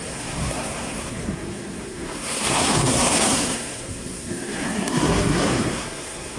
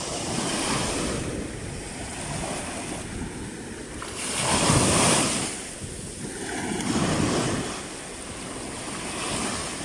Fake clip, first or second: first